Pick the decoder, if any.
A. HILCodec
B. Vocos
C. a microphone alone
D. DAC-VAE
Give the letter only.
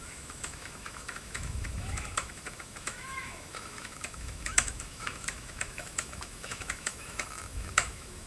D